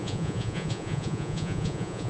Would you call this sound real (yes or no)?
no